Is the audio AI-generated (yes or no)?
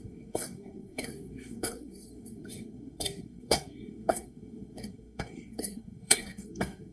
yes